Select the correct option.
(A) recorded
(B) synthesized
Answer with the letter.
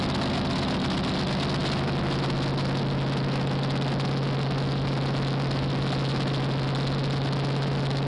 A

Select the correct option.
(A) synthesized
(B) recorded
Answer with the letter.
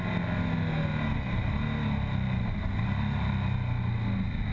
B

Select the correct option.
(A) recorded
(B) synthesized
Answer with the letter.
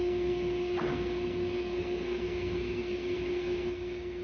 B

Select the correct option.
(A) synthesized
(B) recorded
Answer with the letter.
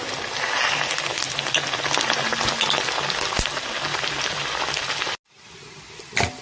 B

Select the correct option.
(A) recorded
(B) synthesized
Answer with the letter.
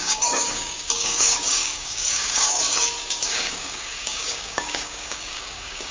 B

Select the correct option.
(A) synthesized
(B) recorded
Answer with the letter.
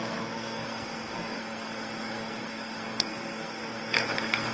A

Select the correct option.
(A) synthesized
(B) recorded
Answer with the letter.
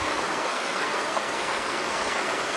A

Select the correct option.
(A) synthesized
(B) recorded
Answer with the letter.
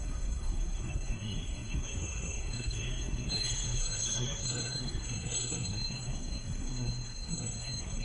A